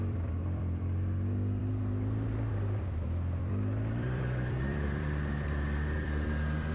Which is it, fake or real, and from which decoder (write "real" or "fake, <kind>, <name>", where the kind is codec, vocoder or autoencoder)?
fake, vocoder, BigVGAN v2